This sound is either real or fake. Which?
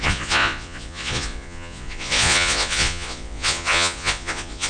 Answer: fake